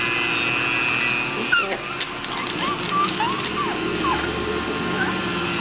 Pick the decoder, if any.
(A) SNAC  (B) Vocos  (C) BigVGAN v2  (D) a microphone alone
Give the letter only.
D